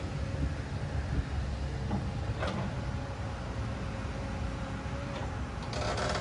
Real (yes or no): yes